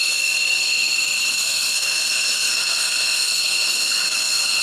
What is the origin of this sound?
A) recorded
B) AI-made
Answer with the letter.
B